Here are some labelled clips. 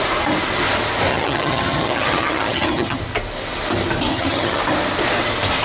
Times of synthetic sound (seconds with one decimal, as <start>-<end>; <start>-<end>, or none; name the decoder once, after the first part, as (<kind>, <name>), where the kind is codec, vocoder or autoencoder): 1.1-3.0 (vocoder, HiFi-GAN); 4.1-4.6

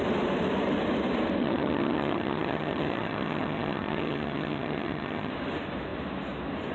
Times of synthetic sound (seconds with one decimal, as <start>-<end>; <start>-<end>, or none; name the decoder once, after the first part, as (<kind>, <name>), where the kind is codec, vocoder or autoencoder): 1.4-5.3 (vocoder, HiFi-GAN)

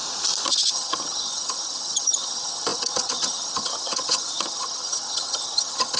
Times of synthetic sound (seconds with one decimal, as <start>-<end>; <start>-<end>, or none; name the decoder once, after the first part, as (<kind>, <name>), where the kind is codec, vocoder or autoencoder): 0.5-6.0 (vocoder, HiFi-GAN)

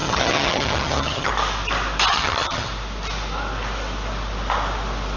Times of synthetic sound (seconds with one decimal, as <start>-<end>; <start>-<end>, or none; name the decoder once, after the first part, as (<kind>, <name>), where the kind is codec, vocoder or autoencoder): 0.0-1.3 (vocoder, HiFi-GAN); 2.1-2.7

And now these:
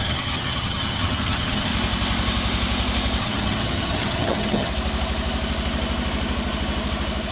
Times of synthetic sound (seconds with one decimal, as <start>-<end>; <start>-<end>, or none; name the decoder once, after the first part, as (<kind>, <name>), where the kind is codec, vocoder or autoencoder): 0.0-1.7 (vocoder, HiFi-GAN); 3.2-4.7

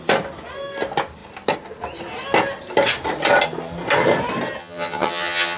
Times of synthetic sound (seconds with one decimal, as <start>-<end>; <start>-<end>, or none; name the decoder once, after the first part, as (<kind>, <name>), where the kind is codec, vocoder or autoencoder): 4.6-5.6 (vocoder, HiFi-GAN)

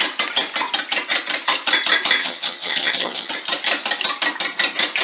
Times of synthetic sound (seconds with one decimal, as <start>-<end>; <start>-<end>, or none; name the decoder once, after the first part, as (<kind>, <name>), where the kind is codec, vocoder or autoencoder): 2.2-3.3 (vocoder, HiFi-GAN)

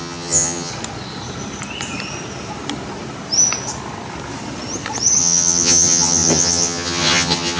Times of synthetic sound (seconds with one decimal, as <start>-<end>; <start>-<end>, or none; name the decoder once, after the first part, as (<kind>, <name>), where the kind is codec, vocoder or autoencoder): 0.0-0.7 (vocoder, HiFi-GAN); 5.2-7.6